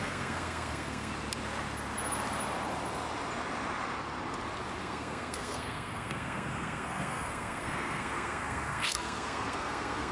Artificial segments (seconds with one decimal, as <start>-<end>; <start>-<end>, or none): 0.0-1.1; 4.8-10.1